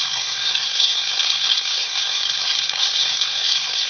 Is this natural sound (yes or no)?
no